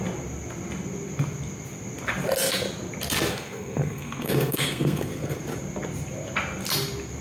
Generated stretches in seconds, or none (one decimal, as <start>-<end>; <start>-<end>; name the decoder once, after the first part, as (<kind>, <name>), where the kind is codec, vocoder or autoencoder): 3.3-5.4 (codec, SNAC)